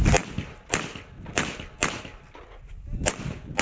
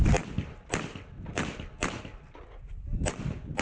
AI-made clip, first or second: second